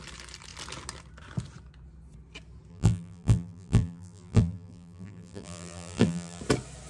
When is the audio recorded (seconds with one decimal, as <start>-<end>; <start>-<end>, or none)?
0.0-2.7; 6.4-6.9